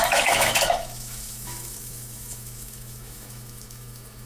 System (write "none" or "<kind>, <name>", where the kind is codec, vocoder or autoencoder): autoencoder, DAC-VAE